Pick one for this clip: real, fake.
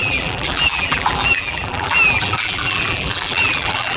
fake